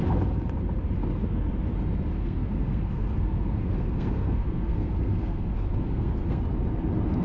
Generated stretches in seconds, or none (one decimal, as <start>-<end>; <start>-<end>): 2.1-6.4

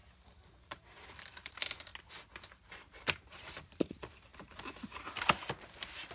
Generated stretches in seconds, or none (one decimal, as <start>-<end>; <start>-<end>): 0.7-1.9; 2.5-6.1

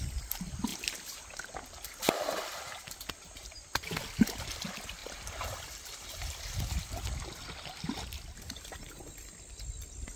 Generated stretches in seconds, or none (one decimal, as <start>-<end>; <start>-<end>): none